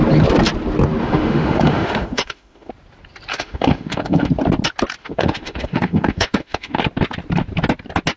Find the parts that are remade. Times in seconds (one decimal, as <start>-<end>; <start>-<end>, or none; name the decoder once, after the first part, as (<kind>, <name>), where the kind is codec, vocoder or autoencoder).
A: 1.0-2.7 (autoencoder, DAC-VAE); 3.3-4.3; 5.0-6.8